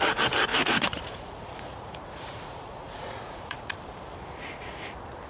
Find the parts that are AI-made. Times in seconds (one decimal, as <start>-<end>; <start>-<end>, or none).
0.5-3.7